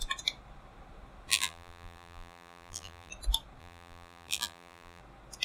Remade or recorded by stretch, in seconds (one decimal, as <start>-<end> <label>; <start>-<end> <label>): 0.0-1.3 recorded; 1.3-3.1 remade; 3.1-3.6 recorded; 3.6-5.0 remade; 5.0-5.4 recorded